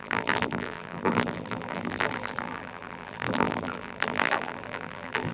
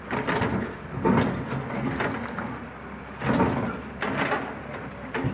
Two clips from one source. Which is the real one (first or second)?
second